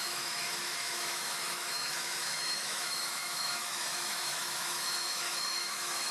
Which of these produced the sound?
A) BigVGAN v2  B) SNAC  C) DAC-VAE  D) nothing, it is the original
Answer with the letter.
C